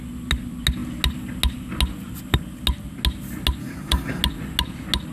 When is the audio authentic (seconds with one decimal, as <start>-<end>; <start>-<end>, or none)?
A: 0.0-3.6; 4.2-5.1